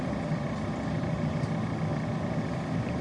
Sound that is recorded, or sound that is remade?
recorded